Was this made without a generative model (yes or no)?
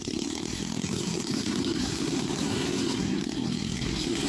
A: no